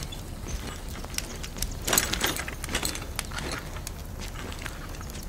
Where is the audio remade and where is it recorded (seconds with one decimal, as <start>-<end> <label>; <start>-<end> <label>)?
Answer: 0.0-5.3 recorded